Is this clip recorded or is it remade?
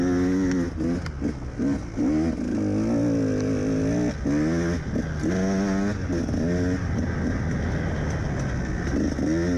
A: recorded